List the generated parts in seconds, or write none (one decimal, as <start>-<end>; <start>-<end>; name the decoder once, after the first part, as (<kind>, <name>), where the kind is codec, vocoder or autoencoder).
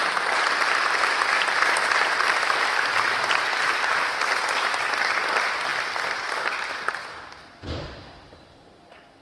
none